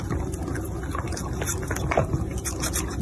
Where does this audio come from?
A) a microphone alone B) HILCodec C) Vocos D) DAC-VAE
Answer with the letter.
A